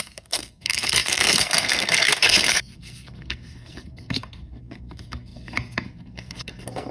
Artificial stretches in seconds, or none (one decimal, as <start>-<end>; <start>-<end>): 0.0-6.9

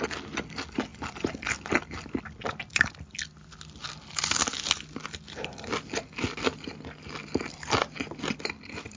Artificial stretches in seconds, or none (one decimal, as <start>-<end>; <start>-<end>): none

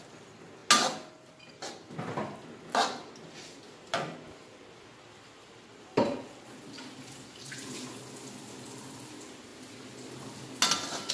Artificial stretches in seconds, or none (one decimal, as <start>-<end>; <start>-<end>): none

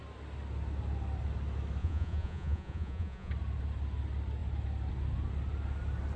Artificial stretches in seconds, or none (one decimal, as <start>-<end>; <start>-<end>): 1.8-3.3

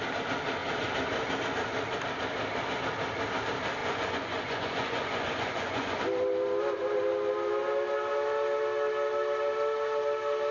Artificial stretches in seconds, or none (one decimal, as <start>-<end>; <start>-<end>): 3.8-6.0